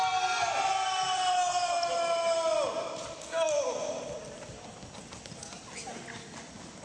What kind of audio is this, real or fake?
real